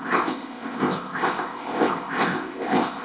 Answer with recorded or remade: remade